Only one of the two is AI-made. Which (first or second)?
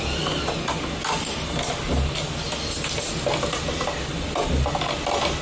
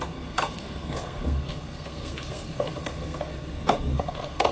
second